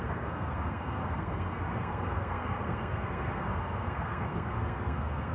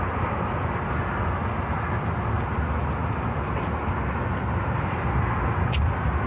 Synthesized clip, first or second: first